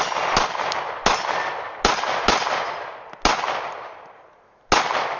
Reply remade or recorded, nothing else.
recorded